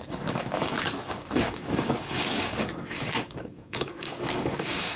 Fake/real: fake